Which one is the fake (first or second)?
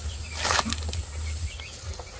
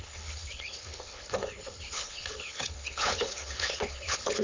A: second